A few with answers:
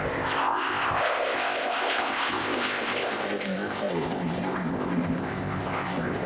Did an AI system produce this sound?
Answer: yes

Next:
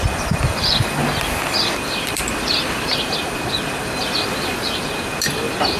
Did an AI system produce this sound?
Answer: yes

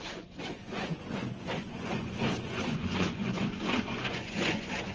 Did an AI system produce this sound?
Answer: yes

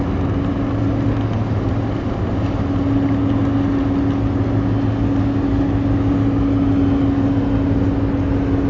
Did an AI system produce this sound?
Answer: no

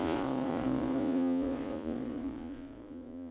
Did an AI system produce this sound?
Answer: yes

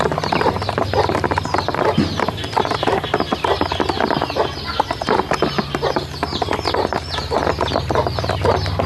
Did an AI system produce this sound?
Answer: no